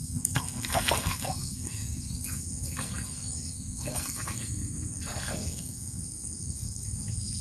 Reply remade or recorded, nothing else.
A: remade